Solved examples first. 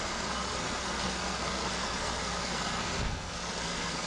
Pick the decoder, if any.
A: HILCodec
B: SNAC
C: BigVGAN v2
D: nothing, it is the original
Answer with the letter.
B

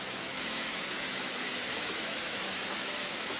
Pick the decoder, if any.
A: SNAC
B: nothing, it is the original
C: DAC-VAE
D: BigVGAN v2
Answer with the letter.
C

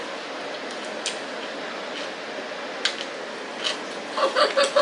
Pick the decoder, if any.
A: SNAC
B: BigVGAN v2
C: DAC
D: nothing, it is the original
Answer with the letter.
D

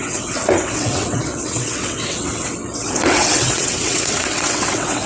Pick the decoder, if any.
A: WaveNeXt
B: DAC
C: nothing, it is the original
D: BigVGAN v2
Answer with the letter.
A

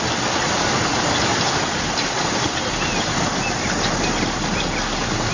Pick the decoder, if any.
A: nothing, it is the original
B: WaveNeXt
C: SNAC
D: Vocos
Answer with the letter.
A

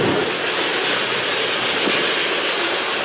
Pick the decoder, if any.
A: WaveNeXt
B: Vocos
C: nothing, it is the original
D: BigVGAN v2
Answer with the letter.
C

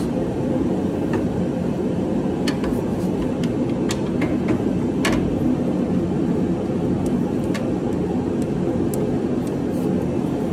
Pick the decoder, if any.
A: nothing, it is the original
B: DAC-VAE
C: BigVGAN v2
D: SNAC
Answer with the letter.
A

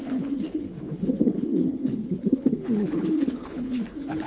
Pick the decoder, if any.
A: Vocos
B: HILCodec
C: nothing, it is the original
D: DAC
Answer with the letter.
B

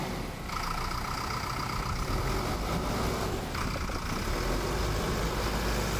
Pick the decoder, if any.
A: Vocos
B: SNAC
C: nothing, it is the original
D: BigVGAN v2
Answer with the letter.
C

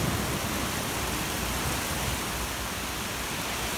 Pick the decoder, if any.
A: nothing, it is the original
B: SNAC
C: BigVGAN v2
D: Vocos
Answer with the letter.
A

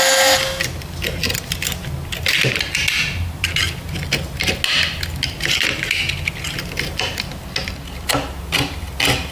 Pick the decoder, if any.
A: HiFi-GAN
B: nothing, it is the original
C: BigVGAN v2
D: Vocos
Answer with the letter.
B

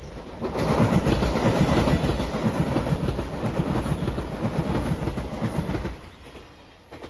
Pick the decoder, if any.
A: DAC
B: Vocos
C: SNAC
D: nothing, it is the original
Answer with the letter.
D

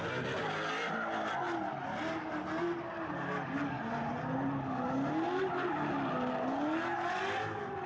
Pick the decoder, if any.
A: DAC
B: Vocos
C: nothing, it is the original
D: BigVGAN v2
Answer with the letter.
C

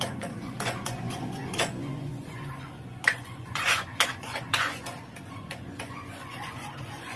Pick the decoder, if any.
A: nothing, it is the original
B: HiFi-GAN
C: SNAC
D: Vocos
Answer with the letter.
D